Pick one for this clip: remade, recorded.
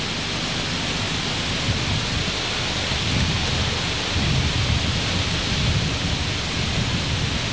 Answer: recorded